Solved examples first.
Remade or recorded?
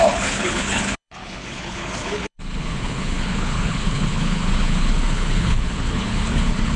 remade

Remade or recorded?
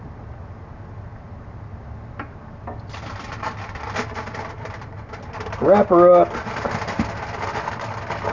recorded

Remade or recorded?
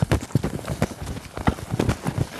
recorded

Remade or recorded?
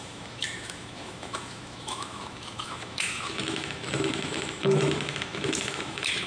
remade